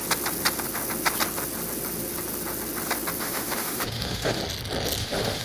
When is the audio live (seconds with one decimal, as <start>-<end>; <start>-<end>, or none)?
0.0-3.2; 4.4-5.0